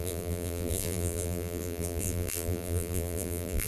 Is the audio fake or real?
fake